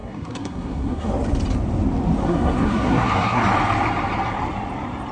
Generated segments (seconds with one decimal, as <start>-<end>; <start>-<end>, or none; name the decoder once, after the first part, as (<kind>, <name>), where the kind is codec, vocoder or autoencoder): 0.0-1.1 (codec, SNAC); 2.2-3.4